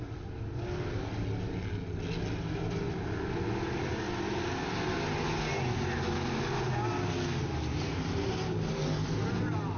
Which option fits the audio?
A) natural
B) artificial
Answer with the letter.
A